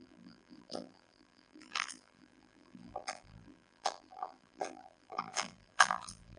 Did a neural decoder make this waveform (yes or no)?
yes